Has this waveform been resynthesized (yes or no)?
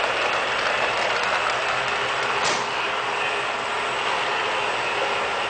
no